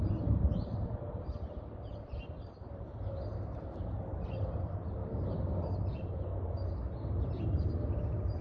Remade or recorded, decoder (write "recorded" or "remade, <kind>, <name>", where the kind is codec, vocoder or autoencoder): recorded